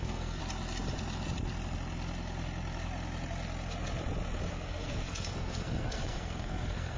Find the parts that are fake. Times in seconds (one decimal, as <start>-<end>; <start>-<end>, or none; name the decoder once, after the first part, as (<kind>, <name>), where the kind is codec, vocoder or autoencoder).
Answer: 0.0-0.4 (codec, SNAC); 4.5-7.0